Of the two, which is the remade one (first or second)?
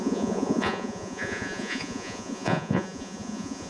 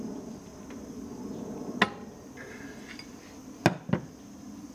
first